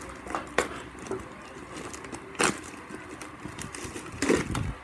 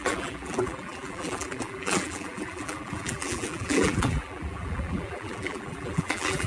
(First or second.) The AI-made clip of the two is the second